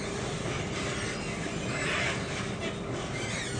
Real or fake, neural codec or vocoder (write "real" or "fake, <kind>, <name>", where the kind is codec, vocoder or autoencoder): real